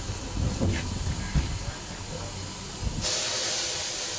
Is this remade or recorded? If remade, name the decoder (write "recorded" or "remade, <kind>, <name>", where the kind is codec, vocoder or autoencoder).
recorded